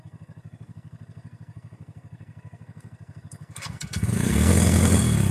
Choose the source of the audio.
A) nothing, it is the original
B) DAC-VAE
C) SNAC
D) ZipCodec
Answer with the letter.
C